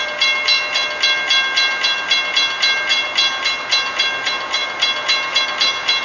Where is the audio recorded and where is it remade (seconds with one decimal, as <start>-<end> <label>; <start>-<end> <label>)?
0.0-6.0 recorded